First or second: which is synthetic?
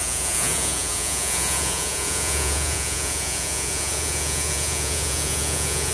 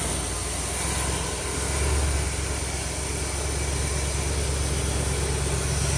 first